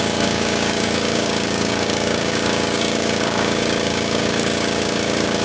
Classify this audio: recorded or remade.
remade